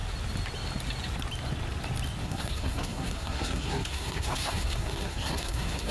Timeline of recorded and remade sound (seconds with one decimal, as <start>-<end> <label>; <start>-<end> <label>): 0.0-2.2 recorded; 2.2-5.9 remade

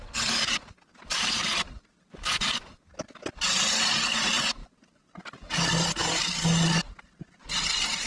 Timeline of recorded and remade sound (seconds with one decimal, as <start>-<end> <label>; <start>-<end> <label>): 0.0-8.1 recorded

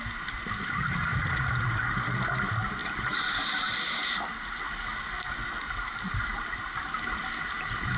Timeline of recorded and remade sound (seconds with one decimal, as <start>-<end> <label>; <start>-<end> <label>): 0.0-8.0 recorded

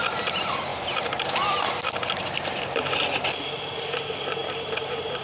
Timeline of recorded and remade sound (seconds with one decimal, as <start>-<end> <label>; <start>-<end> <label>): 0.0-4.4 recorded; 4.4-5.2 remade

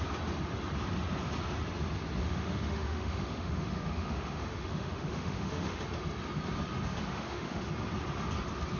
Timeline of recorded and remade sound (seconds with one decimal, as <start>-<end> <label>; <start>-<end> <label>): 0.0-2.2 recorded; 2.2-5.8 remade; 5.8-7.1 recorded; 7.1-7.7 remade; 7.7-8.8 recorded

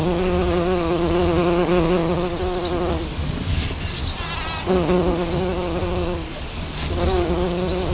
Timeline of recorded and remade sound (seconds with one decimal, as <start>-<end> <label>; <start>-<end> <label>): 0.0-2.0 remade; 2.0-2.9 recorded; 2.9-4.0 remade; 4.0-4.7 recorded; 4.7-7.9 remade